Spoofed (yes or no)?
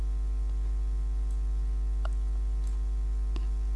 no